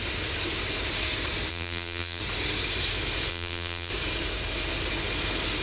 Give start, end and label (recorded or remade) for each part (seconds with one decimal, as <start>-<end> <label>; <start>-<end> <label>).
0.0-1.5 recorded; 1.5-2.2 remade; 2.2-3.3 recorded; 3.3-3.9 remade; 3.9-5.6 recorded